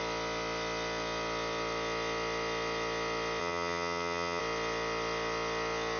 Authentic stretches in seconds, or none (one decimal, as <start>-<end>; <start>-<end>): 0.0-3.4; 4.4-6.0